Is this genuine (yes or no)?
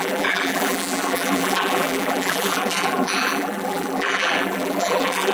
no